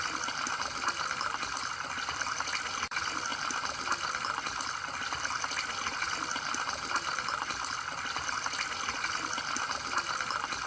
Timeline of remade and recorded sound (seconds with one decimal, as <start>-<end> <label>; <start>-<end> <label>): 0.0-10.7 recorded